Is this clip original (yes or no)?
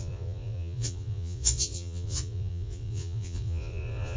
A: no